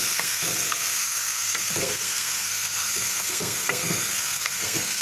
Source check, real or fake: fake